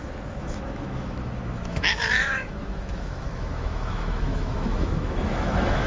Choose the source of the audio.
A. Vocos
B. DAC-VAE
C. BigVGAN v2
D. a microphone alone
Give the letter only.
B